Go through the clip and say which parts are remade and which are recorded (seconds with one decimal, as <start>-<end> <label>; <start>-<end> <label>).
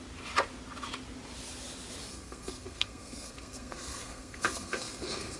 0.0-2.1 recorded; 2.1-5.4 remade